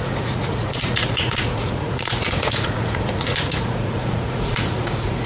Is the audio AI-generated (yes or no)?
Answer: yes